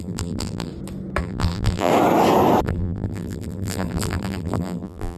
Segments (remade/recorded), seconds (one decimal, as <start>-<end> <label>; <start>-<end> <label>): 0.0-0.7 remade; 0.7-1.2 recorded; 1.2-1.9 remade; 1.9-2.6 recorded; 2.6-5.2 remade